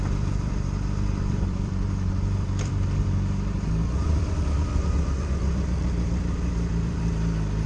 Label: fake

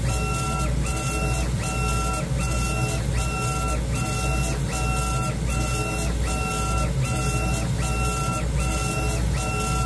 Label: real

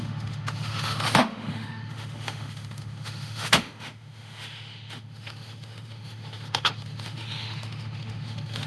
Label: fake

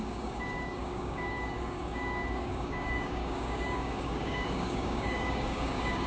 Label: fake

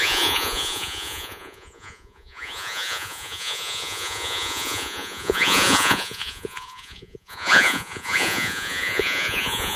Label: fake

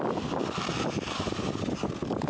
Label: real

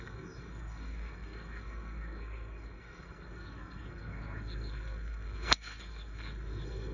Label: fake